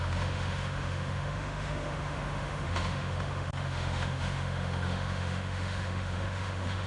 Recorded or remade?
remade